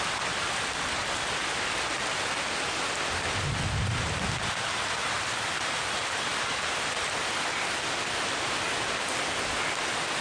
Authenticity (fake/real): real